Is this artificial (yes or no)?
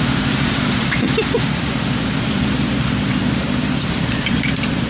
yes